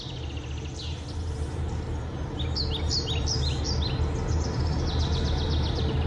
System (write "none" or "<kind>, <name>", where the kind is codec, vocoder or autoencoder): none